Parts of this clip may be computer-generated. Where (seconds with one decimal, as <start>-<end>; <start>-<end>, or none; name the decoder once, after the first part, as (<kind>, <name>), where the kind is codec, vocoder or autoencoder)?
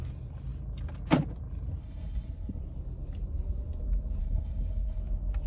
1.8-2.6 (codec, HILCodec); 4.2-5.0